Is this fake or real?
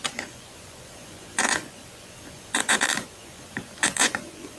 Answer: fake